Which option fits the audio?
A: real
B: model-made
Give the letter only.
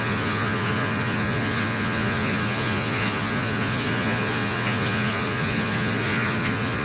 B